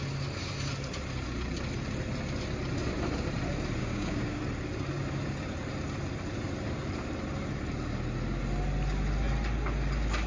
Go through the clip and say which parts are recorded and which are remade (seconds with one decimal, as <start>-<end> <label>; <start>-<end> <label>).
0.0-3.8 recorded; 3.8-4.4 remade; 4.4-10.3 recorded